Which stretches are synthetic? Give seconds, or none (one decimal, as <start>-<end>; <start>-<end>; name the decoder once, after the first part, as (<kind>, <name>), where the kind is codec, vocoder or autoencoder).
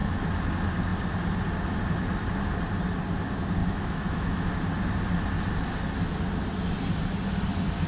3.6-4.5 (autoencoder, DAC-VAE)